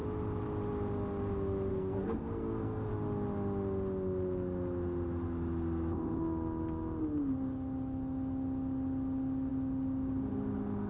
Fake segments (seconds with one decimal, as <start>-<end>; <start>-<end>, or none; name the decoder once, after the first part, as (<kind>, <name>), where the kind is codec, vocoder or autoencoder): 1.7-2.9 (codec, SNAC)